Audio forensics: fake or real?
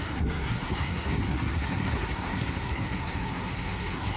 fake